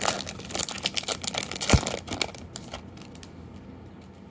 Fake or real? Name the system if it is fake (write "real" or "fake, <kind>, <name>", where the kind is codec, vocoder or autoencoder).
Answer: real